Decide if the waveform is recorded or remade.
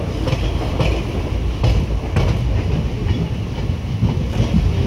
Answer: recorded